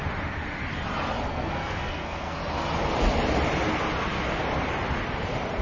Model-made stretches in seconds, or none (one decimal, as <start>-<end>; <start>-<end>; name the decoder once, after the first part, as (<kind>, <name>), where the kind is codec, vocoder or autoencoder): 1.3-2.4 (codec, SNAC)